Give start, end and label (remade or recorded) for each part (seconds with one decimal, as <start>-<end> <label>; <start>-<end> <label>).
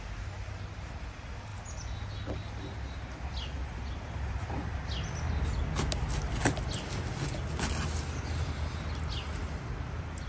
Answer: 0.0-10.3 recorded